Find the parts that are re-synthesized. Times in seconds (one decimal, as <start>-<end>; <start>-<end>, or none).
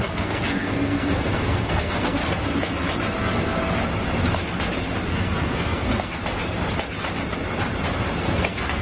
0.0-2.2; 5.1-6.2; 8.2-8.8